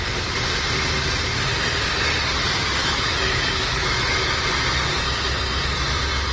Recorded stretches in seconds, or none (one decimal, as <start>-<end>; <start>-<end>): 0.0-2.8; 4.3-6.3